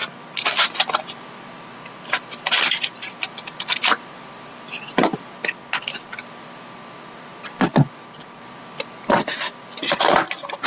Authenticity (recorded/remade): recorded